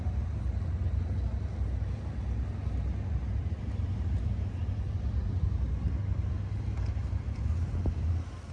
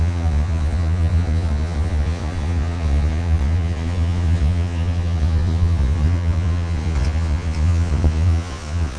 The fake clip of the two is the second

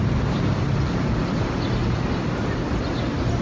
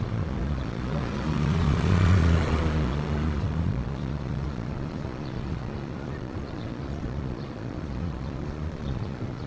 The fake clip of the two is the second